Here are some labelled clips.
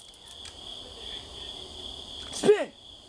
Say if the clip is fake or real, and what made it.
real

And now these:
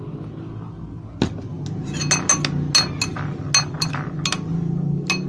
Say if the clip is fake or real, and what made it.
real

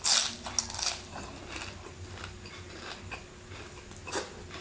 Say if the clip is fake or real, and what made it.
real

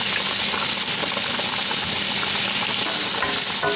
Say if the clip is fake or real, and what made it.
real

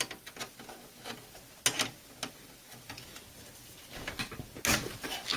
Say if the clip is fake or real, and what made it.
real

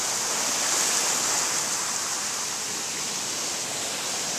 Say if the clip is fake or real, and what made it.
real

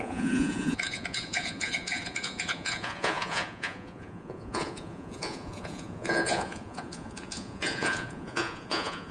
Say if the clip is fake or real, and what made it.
fake, vocoder, Vocos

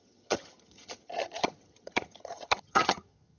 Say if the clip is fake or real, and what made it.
fake, vocoder, HiFi-GAN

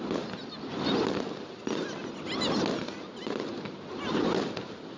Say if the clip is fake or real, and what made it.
real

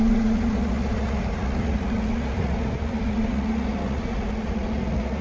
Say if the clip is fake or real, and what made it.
fake, vocoder, Vocos